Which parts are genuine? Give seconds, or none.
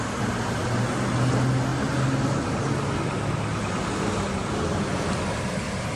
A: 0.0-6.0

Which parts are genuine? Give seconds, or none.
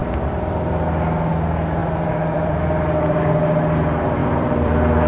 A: 0.5-1.8; 3.2-4.2